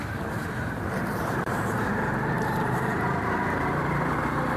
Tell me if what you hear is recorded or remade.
remade